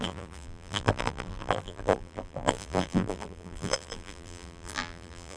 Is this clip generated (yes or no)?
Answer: yes